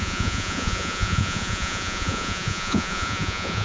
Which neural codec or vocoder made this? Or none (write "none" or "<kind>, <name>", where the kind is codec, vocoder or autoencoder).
vocoder, Vocos